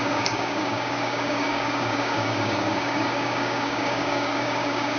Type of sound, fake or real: fake